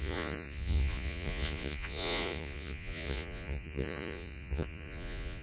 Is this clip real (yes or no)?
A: no